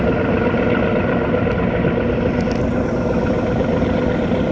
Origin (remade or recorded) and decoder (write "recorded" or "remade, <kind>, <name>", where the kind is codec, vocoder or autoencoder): recorded